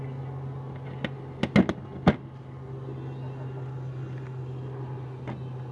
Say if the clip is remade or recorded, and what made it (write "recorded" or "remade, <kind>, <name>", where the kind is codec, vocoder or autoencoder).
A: recorded